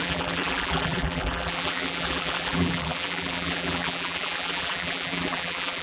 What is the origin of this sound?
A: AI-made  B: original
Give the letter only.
A